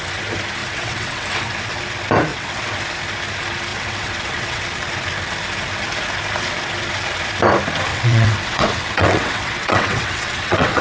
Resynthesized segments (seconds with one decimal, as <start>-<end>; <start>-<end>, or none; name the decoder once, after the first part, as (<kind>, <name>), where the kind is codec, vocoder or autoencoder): 0.6-1.8 (vocoder, WaveNeXt); 2.3-2.8; 3.7-4.6; 7.9-10.8